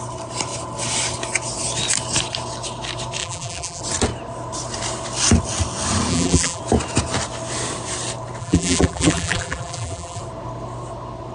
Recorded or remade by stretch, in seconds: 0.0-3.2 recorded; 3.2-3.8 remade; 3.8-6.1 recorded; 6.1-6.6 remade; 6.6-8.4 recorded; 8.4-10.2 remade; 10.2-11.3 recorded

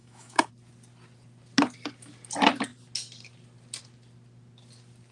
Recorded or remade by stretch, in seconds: 0.0-0.5 remade; 0.5-5.1 recorded